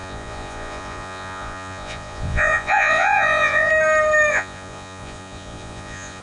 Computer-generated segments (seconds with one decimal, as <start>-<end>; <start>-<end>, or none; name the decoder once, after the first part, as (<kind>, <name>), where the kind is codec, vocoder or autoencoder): 0.0-3.7 (vocoder, Vocos); 4.3-6.2

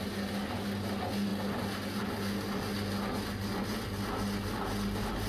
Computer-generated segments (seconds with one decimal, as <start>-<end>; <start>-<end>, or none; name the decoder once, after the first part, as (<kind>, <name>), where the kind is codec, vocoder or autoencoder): none

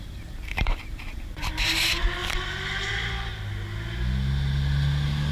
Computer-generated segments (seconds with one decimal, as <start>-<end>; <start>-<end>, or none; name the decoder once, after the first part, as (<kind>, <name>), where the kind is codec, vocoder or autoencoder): 0.0-2.2 (vocoder, BigVGAN v2); 2.9-3.3

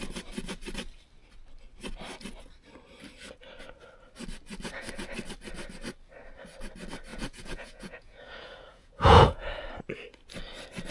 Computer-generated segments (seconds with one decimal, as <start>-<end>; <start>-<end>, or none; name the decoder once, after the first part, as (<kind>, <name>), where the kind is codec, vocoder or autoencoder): 7.1-9.5 (vocoder, Vocos)